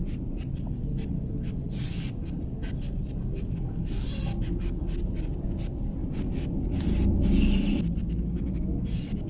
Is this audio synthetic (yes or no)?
no